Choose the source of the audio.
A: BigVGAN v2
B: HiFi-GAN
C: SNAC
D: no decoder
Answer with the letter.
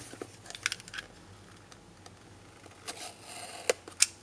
D